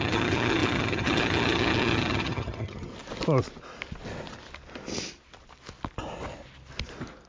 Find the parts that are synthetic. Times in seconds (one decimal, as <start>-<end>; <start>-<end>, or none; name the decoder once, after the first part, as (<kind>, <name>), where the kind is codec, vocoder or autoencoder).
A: 0.0-2.9 (vocoder, HiFi-GAN)